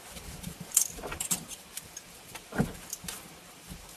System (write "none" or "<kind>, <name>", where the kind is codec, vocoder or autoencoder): vocoder, BigVGAN v2